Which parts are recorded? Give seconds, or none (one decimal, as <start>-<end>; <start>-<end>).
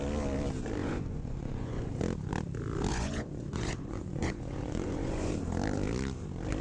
0.0-0.8; 1.9-2.9; 5.3-6.6